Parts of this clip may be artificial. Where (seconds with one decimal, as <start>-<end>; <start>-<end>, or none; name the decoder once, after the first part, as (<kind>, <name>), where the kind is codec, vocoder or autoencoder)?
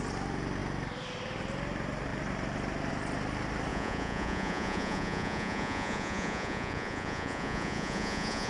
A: 3.7-8.5 (vocoder, Vocos)